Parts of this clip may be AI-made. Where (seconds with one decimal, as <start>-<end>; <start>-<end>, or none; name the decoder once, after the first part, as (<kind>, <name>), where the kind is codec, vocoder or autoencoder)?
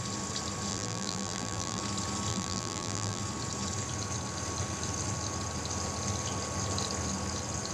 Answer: 0.7-1.8 (vocoder, BigVGAN v2); 2.3-3.2